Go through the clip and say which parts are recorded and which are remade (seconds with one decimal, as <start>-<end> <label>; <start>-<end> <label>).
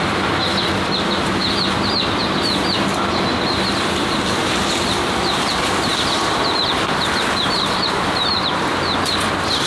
0.0-0.5 remade; 0.5-1.4 recorded; 1.4-2.2 remade; 2.2-3.8 recorded; 3.8-9.7 remade